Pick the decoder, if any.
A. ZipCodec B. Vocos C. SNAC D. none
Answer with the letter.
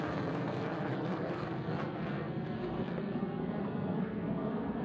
C